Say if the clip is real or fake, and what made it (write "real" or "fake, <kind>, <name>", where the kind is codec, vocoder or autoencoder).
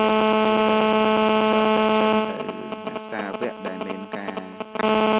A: real